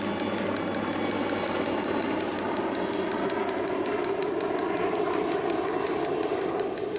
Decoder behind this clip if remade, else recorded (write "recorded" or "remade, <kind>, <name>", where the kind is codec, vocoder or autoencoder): recorded